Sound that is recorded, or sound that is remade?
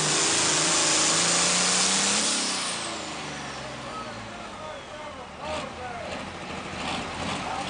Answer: recorded